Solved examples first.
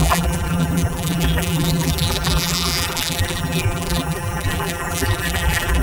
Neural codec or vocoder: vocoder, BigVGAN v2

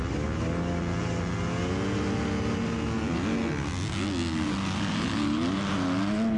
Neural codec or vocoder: none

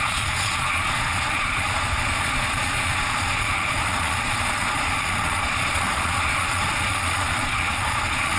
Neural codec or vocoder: vocoder, Vocos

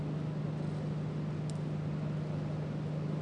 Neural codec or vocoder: none